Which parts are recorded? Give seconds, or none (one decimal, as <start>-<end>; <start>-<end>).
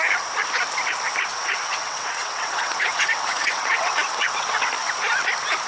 0.0-1.3; 4.7-5.7